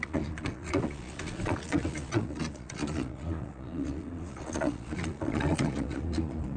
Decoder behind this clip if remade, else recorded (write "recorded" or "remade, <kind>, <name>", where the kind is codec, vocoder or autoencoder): remade, vocoder, Vocos